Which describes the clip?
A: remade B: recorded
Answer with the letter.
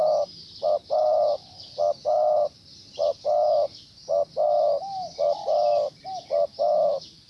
B